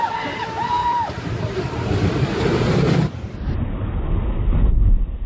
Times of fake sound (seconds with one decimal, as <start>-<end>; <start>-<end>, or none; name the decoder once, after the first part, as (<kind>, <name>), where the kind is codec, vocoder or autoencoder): 0.8-1.9 (vocoder, BigVGAN v2); 2.3-3.9